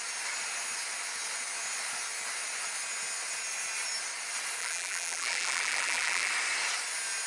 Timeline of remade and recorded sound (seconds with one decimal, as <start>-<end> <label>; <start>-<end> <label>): 0.0-4.6 recorded; 4.6-6.3 remade; 6.3-7.3 recorded